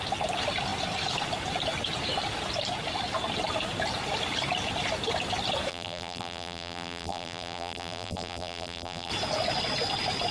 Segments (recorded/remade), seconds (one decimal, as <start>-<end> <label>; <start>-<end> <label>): 0.0-5.7 recorded; 5.7-9.1 remade; 9.1-10.3 recorded